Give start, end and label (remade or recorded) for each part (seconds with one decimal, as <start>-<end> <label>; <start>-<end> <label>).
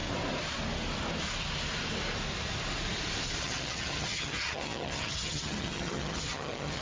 0.0-3.4 recorded; 3.4-6.8 remade